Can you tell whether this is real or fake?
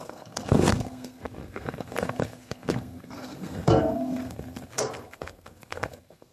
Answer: fake